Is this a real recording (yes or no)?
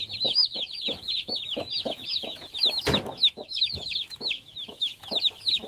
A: no